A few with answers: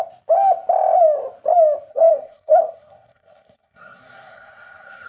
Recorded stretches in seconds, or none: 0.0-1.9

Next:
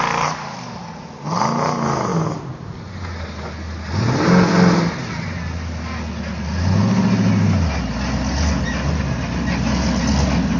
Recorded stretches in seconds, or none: 0.0-10.6

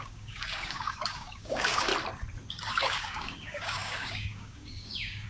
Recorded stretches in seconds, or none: 1.9-2.5